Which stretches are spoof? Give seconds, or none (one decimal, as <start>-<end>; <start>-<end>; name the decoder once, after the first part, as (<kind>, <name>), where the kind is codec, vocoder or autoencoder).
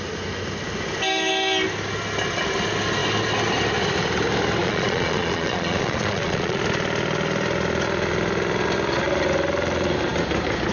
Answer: 4.6-6.6 (vocoder, Vocos)